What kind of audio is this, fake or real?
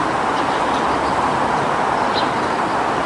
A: real